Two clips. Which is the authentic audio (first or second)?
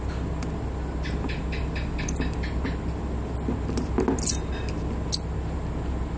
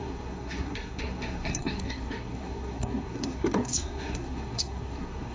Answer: first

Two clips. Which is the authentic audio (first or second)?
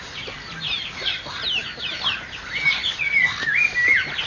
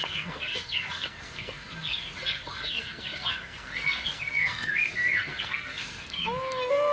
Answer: first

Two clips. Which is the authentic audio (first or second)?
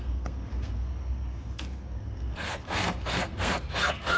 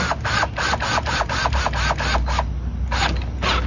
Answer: second